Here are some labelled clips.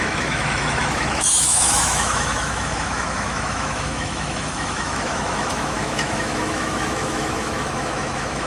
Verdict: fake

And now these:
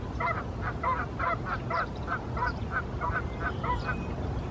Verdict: real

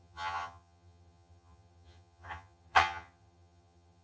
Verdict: fake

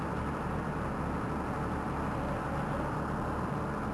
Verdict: real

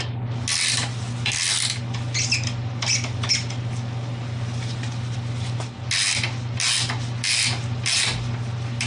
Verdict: real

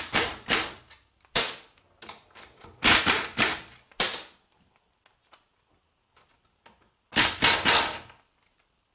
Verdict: real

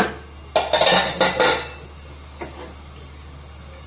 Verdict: real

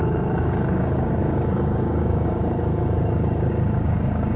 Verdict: fake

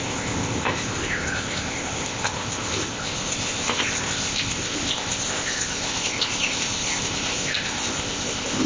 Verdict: fake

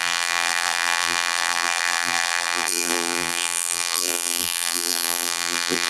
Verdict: fake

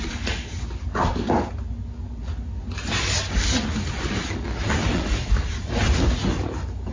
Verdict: real